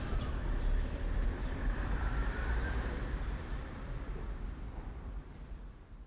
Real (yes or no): no